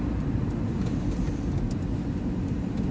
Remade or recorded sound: recorded